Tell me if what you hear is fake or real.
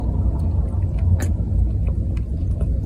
real